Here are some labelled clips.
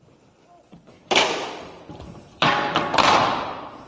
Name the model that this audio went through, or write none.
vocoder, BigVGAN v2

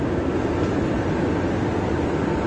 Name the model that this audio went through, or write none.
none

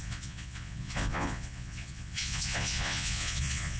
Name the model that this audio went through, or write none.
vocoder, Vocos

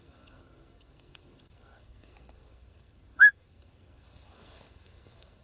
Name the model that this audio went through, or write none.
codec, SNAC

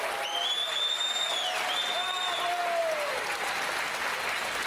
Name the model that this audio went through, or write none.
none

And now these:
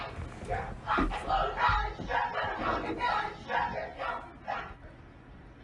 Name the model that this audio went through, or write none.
none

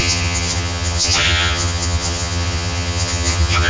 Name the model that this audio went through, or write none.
vocoder, HiFi-GAN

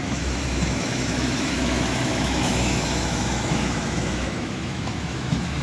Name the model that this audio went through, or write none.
autoencoder, DAC-VAE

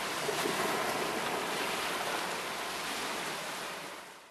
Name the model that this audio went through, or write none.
none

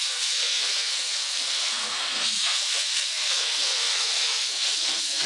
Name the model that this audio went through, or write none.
codec, SNAC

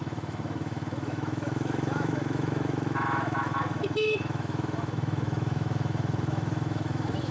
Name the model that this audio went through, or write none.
autoencoder, DAC-VAE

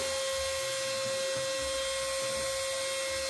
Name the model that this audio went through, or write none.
none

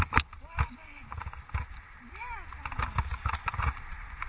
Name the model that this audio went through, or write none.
none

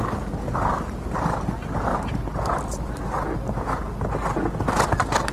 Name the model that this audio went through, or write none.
none